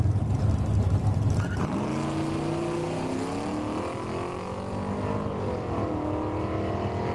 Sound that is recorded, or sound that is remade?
recorded